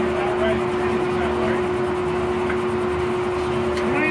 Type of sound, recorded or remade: recorded